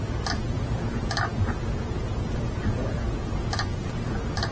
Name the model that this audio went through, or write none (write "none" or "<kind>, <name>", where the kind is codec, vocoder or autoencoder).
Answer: none